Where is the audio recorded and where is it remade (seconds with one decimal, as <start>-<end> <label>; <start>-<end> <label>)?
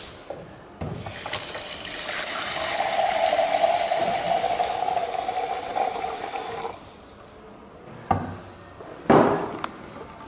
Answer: 0.0-5.7 recorded; 5.7-6.9 remade; 6.9-10.3 recorded